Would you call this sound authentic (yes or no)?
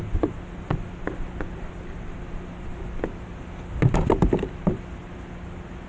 yes